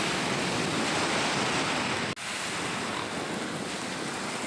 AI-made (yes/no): no